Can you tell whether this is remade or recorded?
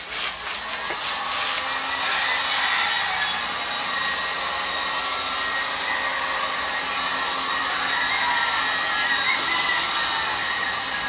recorded